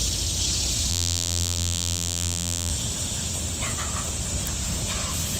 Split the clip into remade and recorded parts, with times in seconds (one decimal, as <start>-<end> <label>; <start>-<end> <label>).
0.0-0.9 recorded; 0.9-2.7 remade; 2.7-5.4 recorded